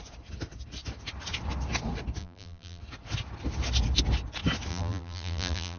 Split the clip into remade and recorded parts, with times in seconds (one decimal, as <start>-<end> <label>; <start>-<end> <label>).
0.0-2.2 recorded; 2.2-2.8 remade; 2.8-4.7 recorded; 4.7-5.8 remade